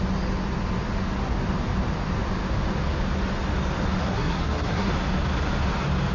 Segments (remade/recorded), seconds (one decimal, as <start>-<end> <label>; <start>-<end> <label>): 0.0-4.0 recorded; 4.0-4.9 remade; 4.9-6.1 recorded

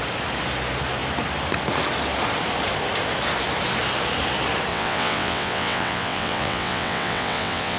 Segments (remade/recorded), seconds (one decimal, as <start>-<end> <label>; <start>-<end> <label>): 0.0-4.7 recorded; 4.7-7.8 remade

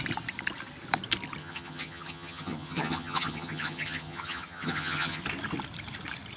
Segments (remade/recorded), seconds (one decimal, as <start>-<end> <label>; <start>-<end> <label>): 0.0-1.4 recorded; 1.4-5.2 remade; 5.2-6.4 recorded

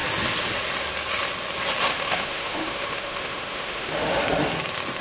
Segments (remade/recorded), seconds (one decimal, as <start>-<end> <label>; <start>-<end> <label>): 0.0-1.8 recorded; 1.8-4.2 remade; 4.2-5.0 recorded

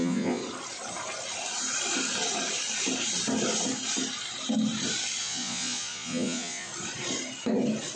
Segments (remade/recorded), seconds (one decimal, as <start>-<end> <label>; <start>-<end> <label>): 0.0-0.4 remade; 0.4-5.2 recorded; 5.2-6.7 remade; 6.7-8.0 recorded

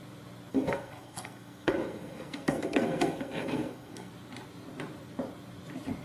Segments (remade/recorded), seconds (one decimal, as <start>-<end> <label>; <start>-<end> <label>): 0.0-0.5 recorded; 0.5-4.1 remade; 4.1-6.0 recorded